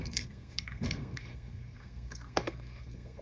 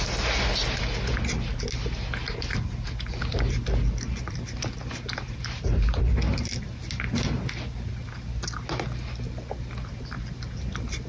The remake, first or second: first